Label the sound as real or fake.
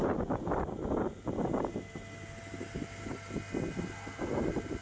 real